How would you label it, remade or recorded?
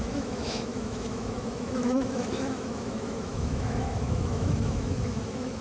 remade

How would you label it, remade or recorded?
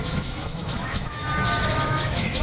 remade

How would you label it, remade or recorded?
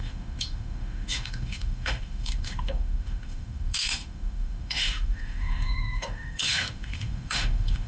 remade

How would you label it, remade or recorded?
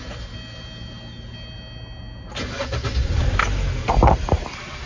recorded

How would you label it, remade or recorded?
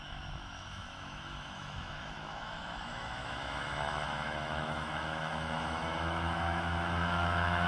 remade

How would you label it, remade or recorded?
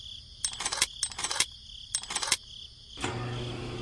recorded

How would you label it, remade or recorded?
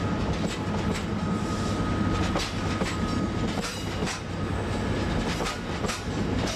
recorded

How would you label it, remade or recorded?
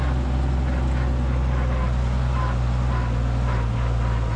recorded